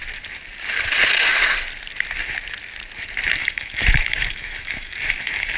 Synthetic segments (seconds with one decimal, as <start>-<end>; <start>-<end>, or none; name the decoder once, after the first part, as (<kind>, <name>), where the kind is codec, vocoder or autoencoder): 3.4-5.6 (autoencoder, DAC-VAE)